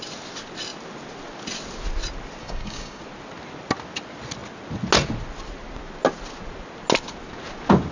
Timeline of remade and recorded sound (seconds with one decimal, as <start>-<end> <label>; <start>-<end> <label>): 0.0-2.4 recorded; 2.4-3.0 remade; 3.0-7.9 recorded